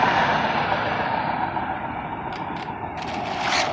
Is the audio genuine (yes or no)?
yes